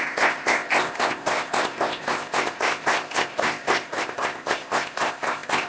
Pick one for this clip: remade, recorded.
remade